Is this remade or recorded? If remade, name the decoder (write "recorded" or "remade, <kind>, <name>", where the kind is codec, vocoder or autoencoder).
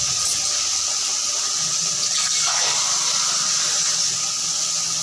recorded